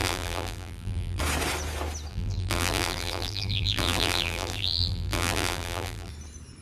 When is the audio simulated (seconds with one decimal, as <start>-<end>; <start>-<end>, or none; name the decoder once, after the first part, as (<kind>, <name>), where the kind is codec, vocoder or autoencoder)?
0.0-1.2 (vocoder, BigVGAN v2); 2.1-6.1